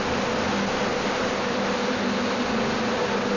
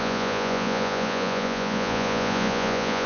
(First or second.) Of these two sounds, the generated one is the second